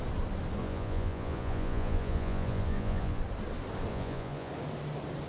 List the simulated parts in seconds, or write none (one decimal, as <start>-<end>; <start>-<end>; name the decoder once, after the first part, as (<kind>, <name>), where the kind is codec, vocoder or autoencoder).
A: 0.6-3.2 (vocoder, Vocos); 3.9-4.5

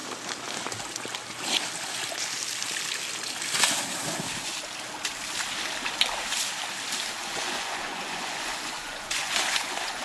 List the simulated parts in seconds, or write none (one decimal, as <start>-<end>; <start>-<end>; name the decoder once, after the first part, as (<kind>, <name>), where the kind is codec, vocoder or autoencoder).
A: 7.2-10.0 (vocoder, Vocos)

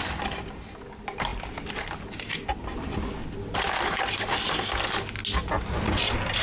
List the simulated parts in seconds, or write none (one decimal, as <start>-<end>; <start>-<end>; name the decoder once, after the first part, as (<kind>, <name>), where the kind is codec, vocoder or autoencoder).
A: none

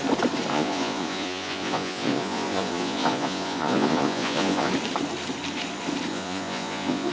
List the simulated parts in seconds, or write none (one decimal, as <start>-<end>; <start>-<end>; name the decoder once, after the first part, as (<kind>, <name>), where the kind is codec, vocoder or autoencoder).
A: 0.5-4.7 (vocoder, Vocos); 6.1-7.1

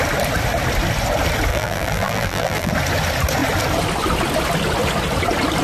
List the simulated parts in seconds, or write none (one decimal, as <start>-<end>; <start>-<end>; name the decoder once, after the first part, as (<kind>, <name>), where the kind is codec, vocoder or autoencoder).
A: 1.5-2.7 (vocoder, BigVGAN v2)

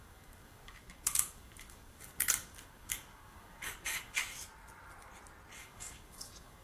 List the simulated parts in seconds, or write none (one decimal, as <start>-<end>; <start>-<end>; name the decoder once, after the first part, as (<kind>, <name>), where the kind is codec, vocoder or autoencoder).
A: 0.0-4.2 (codec, DAC); 5.6-6.6

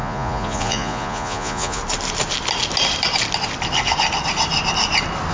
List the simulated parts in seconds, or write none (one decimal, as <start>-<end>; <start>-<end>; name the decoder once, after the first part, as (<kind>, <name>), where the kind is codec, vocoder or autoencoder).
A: 0.0-1.8 (vocoder, Vocos)